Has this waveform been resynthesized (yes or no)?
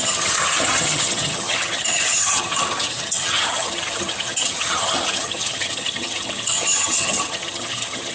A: yes